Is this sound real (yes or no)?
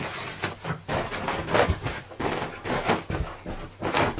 yes